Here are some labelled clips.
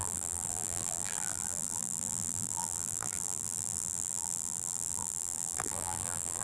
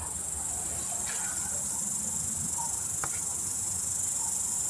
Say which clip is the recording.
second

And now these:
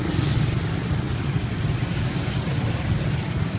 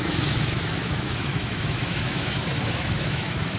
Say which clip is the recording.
first